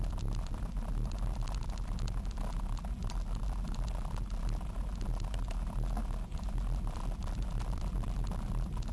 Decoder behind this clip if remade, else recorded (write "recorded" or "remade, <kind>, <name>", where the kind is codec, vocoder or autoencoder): recorded